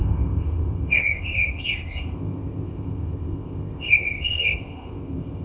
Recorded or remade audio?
remade